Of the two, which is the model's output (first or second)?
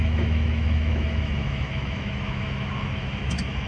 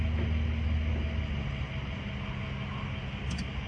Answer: first